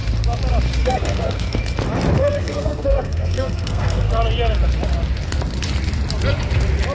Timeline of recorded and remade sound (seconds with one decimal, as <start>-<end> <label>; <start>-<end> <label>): 0.0-0.8 recorded; 0.8-1.6 remade; 1.6-2.2 recorded; 2.2-4.1 remade; 4.1-6.9 recorded